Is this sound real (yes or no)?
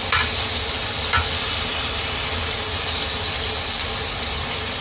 yes